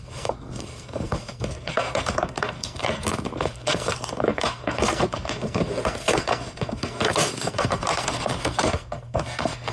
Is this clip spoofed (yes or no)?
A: yes